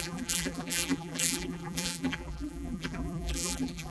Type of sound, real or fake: fake